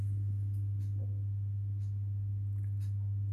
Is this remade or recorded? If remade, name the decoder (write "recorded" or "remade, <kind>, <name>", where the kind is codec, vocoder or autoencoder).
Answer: recorded